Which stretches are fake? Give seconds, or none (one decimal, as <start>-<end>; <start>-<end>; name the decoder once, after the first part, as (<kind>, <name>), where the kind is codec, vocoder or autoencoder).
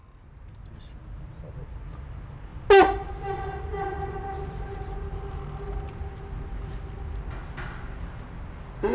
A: none